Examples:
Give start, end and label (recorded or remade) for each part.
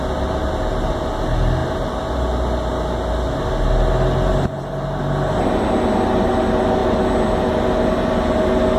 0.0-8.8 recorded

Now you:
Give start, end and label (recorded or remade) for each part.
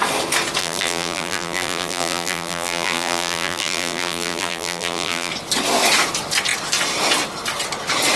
0.0-0.6 recorded; 0.6-5.3 remade; 5.3-8.2 recorded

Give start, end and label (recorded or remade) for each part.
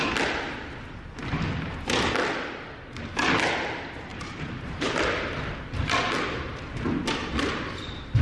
0.0-4.1 recorded; 4.1-4.9 remade; 4.9-8.2 recorded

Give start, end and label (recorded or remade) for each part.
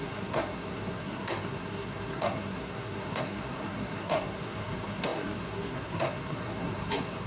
0.0-7.3 remade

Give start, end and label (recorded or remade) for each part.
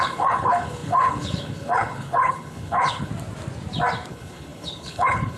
0.0-3.1 remade; 3.1-4.1 recorded; 4.1-5.4 remade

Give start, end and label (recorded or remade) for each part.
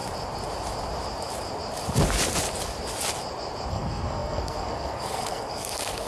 0.0-3.7 recorded; 3.7-6.1 remade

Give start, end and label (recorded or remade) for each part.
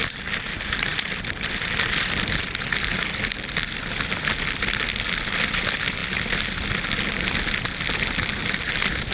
0.0-9.1 recorded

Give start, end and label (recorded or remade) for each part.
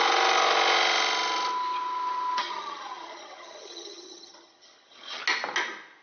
0.0-2.4 recorded; 2.4-5.2 remade; 5.2-6.0 recorded